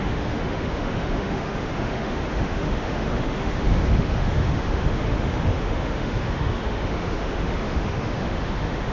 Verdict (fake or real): fake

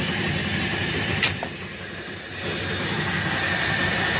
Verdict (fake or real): real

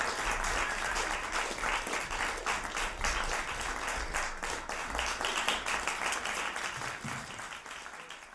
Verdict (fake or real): real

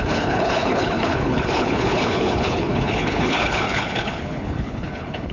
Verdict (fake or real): fake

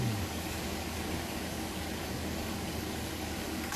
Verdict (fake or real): fake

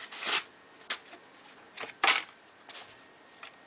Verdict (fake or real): real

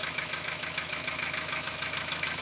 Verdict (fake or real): fake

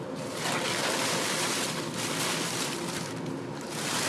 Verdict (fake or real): real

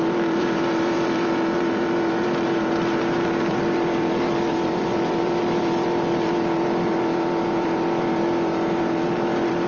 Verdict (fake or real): fake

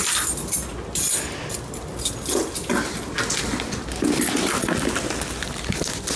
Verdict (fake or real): real